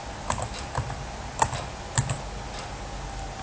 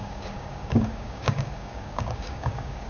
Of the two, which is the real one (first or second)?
first